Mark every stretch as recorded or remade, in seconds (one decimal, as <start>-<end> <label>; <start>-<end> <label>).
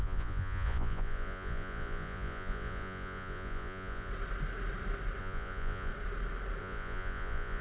0.0-4.1 remade; 4.1-5.2 recorded; 5.2-5.9 remade; 5.9-6.6 recorded; 6.6-7.6 remade